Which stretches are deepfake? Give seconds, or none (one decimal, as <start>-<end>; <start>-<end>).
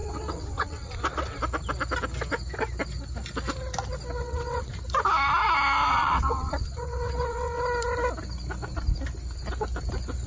0.0-1.4; 4.2-4.7; 5.9-7.6